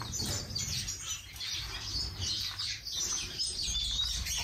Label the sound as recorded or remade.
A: remade